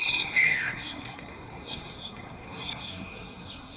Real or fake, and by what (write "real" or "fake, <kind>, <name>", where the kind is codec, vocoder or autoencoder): fake, codec, SNAC